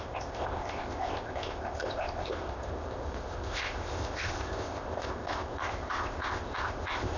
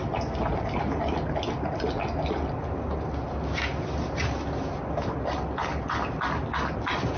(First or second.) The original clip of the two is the second